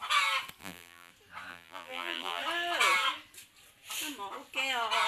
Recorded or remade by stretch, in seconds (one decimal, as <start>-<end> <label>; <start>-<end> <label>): 0.0-0.6 recorded; 0.6-1.1 remade; 1.1-1.5 recorded; 1.5-2.4 remade; 2.4-5.1 recorded